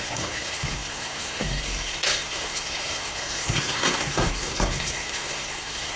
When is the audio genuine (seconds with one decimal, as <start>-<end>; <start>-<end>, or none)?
none